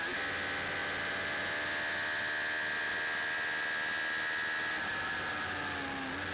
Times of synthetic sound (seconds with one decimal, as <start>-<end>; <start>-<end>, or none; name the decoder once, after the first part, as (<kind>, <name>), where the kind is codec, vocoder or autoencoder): none